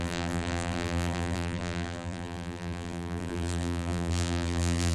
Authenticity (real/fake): fake